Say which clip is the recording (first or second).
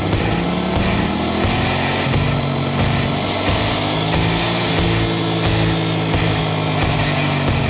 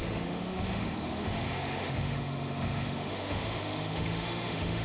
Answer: first